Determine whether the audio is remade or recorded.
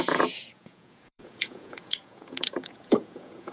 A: remade